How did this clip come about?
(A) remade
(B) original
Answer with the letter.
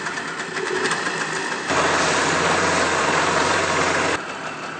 A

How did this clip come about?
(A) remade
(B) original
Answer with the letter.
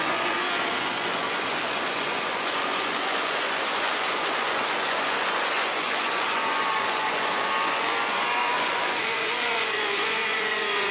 A